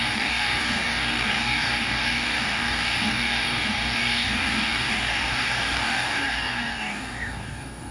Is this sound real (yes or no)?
no